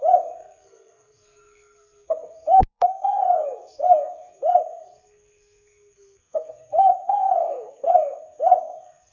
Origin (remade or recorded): remade